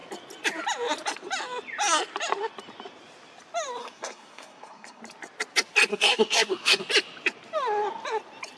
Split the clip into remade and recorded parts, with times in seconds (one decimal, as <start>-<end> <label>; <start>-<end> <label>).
0.0-3.8 recorded; 3.8-5.0 remade; 5.0-5.9 recorded; 5.9-6.8 remade; 6.8-8.6 recorded

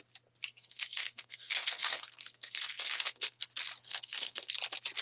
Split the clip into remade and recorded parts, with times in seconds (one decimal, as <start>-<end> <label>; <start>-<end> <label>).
0.0-0.5 recorded; 0.5-3.4 remade; 3.4-3.8 recorded; 3.8-4.5 remade; 4.5-5.0 recorded

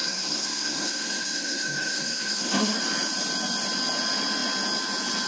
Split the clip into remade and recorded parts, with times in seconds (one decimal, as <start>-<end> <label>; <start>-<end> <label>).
0.0-2.8 remade; 2.8-5.3 recorded